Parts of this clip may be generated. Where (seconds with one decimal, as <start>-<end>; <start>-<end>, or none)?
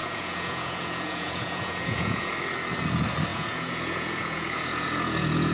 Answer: 0.0-2.3; 3.3-5.5